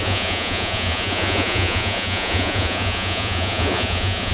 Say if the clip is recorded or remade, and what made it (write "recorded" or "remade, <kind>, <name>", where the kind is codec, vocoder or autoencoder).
remade, vocoder, Vocos